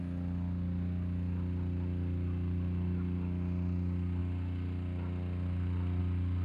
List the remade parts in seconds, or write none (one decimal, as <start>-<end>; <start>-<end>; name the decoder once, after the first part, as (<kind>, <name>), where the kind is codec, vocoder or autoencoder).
none